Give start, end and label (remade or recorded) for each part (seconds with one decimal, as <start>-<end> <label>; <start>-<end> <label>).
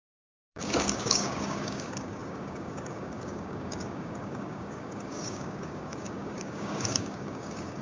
0.0-7.8 remade